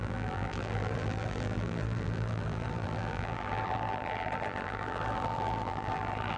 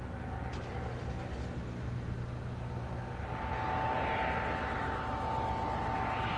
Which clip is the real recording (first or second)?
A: second